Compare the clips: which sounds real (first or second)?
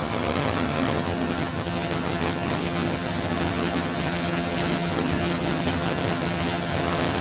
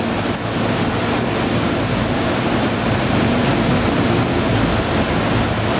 second